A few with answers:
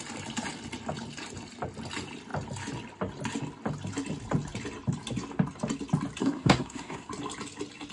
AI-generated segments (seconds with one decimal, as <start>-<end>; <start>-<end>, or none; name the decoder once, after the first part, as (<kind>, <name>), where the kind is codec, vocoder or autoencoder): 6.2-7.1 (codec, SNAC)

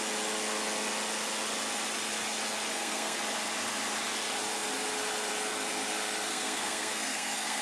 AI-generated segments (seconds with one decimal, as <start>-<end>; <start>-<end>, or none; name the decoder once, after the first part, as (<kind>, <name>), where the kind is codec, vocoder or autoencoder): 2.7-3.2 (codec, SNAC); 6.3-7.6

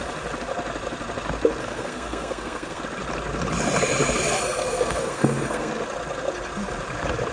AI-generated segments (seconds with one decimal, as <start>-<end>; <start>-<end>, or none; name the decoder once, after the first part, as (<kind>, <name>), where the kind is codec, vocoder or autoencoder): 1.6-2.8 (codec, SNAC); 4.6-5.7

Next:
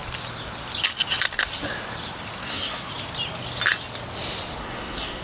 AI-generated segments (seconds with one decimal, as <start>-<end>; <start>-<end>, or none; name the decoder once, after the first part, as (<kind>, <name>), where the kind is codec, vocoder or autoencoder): 2.4-2.9 (codec, SNAC); 4.6-5.2

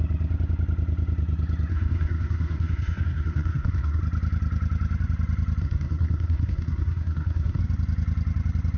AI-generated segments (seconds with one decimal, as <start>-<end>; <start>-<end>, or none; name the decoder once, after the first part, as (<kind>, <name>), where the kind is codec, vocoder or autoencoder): 1.7-4.0 (codec, SNAC); 5.6-7.6

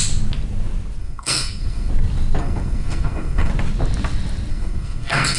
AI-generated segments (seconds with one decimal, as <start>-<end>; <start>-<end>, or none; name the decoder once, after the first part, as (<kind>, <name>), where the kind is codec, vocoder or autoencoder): 1.0-1.9 (codec, SNAC); 2.4-3.5; 4.5-5.4